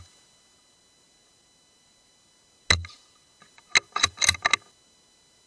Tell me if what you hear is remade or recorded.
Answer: recorded